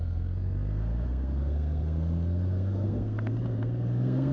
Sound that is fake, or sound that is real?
fake